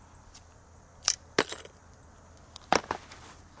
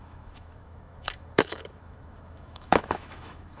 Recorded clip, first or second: first